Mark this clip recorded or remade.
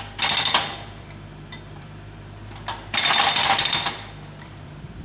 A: remade